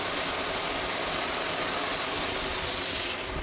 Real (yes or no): yes